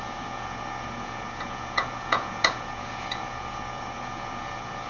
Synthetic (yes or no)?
yes